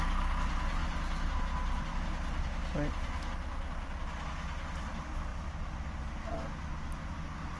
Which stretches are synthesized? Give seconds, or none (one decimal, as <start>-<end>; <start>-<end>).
none